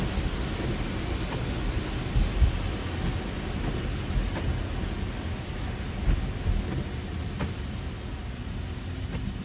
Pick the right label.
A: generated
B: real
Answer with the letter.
B